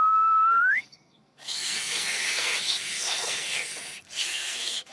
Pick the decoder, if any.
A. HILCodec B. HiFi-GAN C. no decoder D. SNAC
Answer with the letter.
D